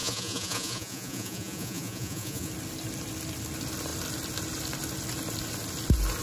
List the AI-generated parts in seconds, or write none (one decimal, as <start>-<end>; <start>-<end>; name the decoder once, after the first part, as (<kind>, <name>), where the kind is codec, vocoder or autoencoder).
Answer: 0.0-2.5 (vocoder, Vocos)